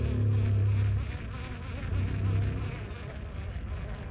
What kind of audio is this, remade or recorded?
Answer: recorded